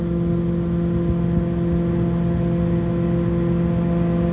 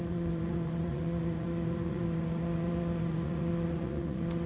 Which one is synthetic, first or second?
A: second